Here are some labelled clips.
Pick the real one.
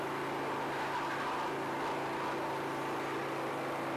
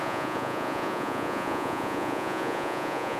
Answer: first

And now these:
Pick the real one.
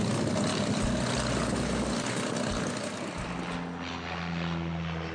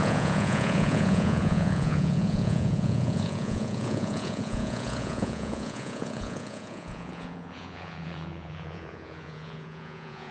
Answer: first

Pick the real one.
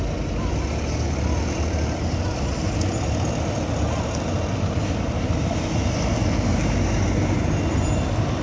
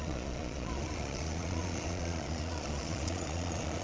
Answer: first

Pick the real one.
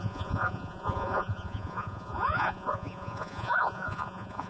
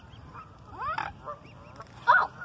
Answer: second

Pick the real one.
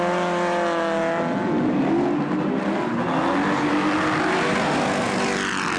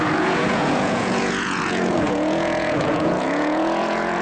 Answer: first